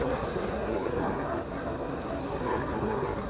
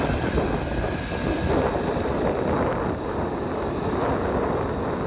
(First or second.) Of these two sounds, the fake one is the first